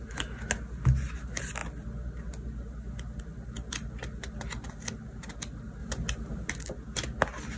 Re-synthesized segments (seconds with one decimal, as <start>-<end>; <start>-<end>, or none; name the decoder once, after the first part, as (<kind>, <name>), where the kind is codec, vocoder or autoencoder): none